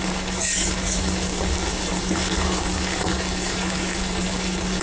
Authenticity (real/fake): fake